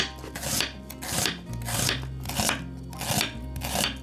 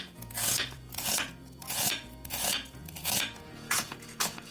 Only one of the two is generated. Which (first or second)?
second